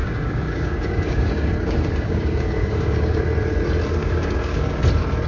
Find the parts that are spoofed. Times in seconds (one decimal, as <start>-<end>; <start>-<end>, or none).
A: 0.0-3.2; 4.0-4.8